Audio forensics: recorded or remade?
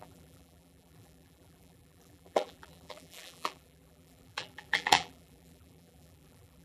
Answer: remade